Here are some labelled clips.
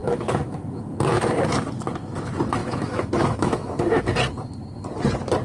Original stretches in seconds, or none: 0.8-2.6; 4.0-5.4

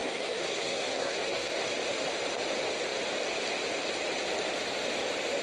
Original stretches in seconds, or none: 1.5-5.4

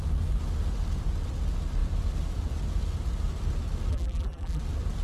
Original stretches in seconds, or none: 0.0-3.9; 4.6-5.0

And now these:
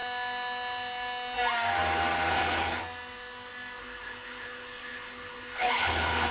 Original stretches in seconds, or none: 0.0-2.3; 2.8-3.8